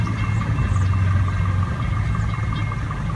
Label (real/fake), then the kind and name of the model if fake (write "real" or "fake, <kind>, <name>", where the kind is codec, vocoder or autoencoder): real